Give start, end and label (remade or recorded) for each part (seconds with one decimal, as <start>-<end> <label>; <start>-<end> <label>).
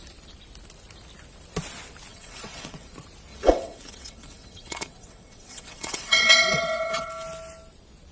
0.0-2.1 recorded; 2.1-2.9 remade; 2.9-3.3 recorded; 3.3-7.1 remade; 7.1-8.1 recorded